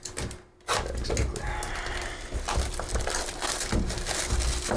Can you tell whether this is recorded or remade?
recorded